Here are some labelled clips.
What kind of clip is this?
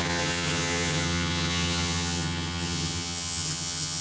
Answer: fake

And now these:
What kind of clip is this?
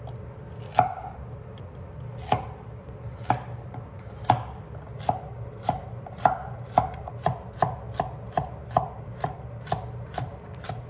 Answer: real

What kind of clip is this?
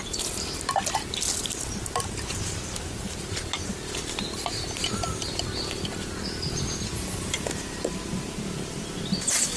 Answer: real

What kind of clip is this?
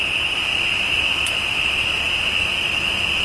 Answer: real